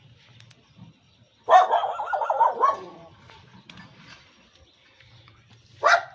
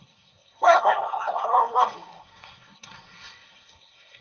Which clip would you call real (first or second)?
first